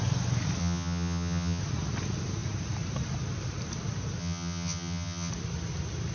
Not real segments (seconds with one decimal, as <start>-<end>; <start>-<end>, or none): 0.6-1.6; 4.2-5.3